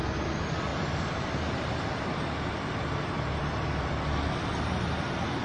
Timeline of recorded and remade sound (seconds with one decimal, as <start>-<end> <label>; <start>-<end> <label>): 0.0-0.7 recorded; 0.7-3.9 remade; 3.9-5.4 recorded